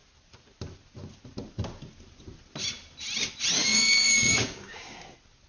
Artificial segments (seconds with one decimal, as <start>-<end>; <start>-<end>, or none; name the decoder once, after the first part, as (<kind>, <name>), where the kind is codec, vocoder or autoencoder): 3.6-5.0 (codec, DAC)